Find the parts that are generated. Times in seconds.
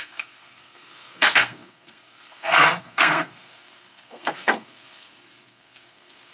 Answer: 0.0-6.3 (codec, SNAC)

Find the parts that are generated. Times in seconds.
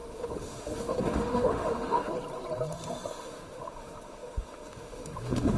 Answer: 0.0-2.1 (autoencoder, DAC-VAE); 3.1-5.6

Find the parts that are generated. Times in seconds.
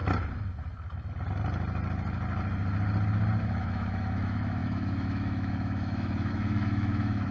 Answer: 3.4-7.3 (autoencoder, DAC-VAE)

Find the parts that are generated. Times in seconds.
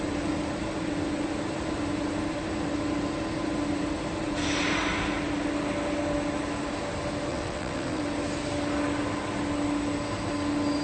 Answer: 7.3-8.0 (vocoder, WaveNeXt)